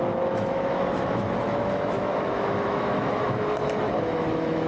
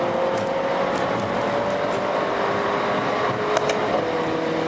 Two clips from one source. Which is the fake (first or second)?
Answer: first